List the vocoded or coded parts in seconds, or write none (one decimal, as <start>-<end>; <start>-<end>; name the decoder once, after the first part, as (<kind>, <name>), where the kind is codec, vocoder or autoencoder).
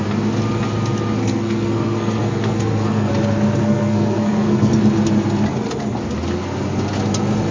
1.2-3.1 (codec, SNAC); 3.6-4.7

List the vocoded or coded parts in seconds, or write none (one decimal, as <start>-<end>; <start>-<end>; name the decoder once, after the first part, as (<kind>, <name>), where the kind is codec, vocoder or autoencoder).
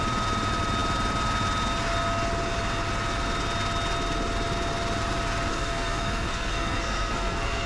5.5-7.7 (codec, SNAC)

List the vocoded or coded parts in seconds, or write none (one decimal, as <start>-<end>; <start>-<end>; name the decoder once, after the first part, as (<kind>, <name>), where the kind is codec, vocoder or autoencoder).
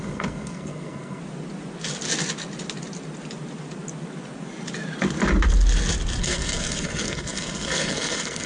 0.0-1.2 (codec, SNAC); 6.2-8.5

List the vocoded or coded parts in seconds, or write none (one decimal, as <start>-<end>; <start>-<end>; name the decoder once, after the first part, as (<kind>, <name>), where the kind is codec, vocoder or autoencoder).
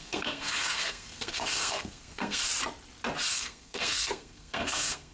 0.0-2.4 (codec, SNAC); 3.3-5.1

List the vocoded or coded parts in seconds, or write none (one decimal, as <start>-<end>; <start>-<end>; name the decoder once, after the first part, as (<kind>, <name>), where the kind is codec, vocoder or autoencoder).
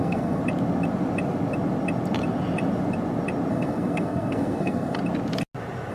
0.0-0.4 (codec, SNAC); 3.5-5.0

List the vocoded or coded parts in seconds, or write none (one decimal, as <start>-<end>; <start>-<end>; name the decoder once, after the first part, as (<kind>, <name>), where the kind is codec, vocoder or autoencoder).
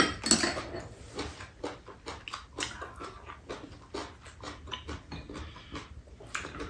none